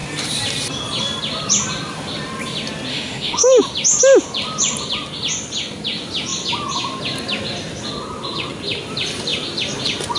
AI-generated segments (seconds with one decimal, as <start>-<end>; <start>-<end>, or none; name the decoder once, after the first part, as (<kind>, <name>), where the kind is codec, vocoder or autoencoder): 2.9-3.6 (autoencoder, DAC-VAE)